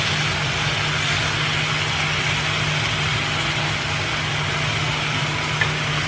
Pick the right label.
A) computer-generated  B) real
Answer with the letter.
B